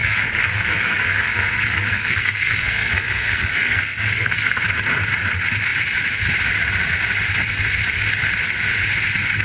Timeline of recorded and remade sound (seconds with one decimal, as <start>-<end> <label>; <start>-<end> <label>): 0.0-4.6 remade; 4.6-9.4 recorded